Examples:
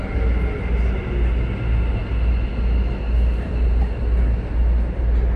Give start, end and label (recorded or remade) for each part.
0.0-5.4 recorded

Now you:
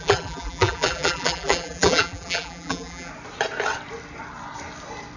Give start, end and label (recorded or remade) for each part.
0.0-3.1 remade; 3.1-5.2 recorded

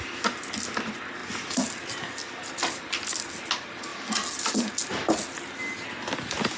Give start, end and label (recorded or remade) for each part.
0.0-6.6 recorded